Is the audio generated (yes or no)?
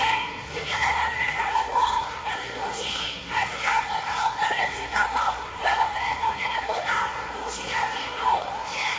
yes